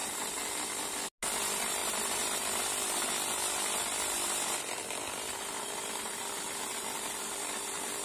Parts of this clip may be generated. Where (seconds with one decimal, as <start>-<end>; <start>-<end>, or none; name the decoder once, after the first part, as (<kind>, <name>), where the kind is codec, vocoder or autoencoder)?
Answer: 0.0-0.5 (vocoder, BigVGAN v2); 1.8-2.6

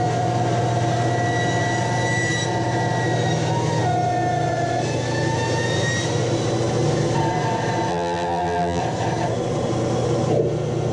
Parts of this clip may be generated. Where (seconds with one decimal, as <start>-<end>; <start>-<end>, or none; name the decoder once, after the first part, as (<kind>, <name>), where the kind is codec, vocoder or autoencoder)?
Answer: 7.9-8.8 (vocoder, BigVGAN v2)

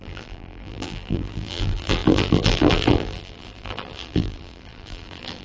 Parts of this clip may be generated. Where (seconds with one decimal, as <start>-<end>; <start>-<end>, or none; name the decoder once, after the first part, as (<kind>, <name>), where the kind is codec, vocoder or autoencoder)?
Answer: 0.0-5.4 (vocoder, BigVGAN v2)

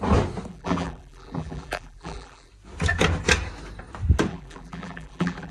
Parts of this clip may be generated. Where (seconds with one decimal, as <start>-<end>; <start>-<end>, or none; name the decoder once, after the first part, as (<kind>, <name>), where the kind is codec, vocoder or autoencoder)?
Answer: 0.5-2.5 (vocoder, BigVGAN v2); 4.3-5.5

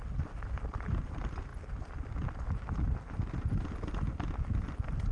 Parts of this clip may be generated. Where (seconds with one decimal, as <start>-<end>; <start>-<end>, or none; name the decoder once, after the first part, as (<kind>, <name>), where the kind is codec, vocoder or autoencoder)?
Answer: 1.5-4.6 (vocoder, BigVGAN v2)

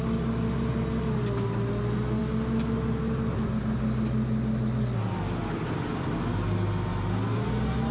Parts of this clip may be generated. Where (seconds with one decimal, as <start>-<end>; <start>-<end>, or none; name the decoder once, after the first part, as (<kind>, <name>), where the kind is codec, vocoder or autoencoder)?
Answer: none

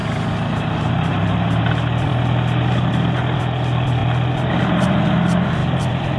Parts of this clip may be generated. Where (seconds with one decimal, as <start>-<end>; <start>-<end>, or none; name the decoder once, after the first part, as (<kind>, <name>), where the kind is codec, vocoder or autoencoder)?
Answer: 0.0-2.1 (vocoder, BigVGAN v2); 2.9-6.2

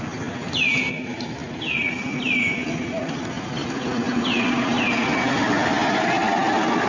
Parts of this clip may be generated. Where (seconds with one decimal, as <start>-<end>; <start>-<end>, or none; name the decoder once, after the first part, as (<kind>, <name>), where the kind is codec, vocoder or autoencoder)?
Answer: 1.1-5.2 (vocoder, BigVGAN v2)